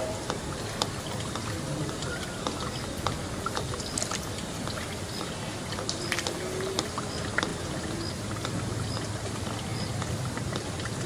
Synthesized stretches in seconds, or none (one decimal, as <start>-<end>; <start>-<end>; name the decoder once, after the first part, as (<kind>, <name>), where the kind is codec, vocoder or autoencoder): 9.7-11.1 (vocoder, BigVGAN v2)